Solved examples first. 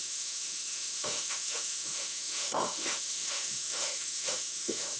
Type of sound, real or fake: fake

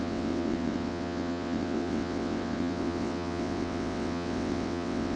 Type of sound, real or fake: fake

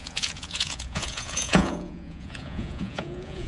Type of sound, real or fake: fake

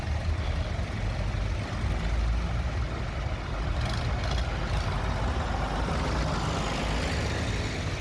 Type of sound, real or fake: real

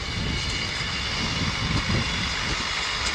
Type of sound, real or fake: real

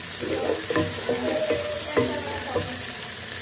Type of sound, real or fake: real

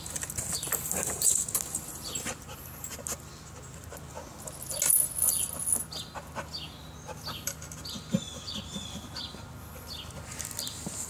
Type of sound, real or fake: real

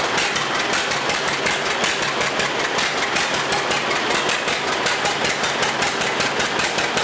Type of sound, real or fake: real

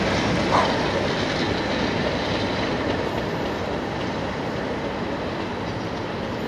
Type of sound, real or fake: real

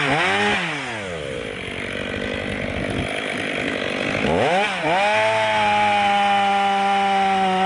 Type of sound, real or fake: real